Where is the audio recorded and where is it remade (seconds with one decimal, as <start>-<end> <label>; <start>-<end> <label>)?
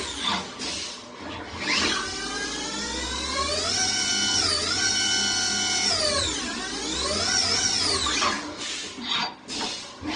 0.0-10.2 recorded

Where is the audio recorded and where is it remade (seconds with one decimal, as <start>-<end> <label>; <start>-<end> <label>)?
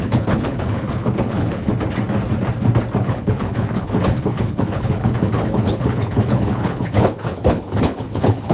0.0-1.7 remade; 1.7-3.0 recorded; 3.0-8.5 remade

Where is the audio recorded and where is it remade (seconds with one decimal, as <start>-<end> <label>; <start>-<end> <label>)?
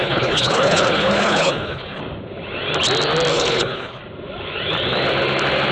0.0-2.0 remade; 2.0-3.3 recorded; 3.3-4.0 remade; 4.0-5.7 recorded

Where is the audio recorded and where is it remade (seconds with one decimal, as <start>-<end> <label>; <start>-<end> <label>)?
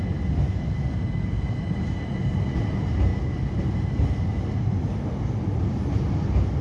0.0-6.6 recorded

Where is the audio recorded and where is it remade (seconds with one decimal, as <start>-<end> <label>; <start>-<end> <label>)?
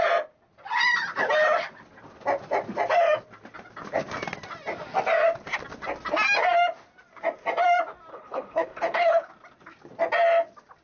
0.0-8.1 recorded; 8.1-9.3 remade; 9.3-10.8 recorded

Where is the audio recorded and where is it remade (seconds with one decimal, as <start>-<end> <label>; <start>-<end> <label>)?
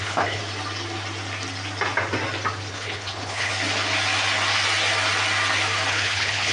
0.0-0.4 remade; 0.4-2.7 recorded; 2.7-3.5 remade; 3.5-5.9 recorded; 5.9-6.5 remade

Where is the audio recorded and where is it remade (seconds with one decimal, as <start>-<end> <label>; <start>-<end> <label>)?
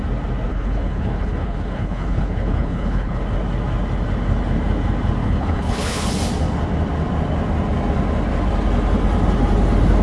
0.0-0.5 recorded; 0.5-3.2 remade; 3.2-5.2 recorded; 5.2-6.1 remade; 6.1-10.0 recorded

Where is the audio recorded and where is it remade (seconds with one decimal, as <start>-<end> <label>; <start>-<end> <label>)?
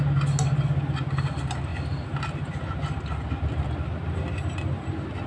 0.0-5.3 recorded